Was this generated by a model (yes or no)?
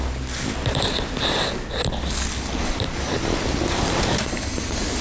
no